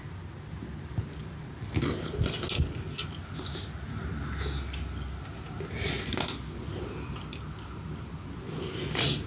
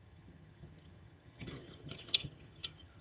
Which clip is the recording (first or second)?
first